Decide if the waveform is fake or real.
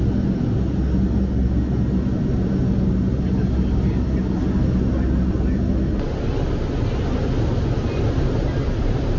real